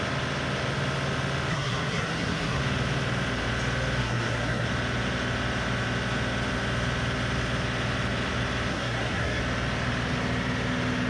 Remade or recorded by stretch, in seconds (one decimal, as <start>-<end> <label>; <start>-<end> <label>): 0.0-1.5 recorded; 1.5-2.6 remade; 2.6-4.0 recorded; 4.0-4.7 remade; 4.7-8.7 recorded; 8.7-9.4 remade; 9.4-11.1 recorded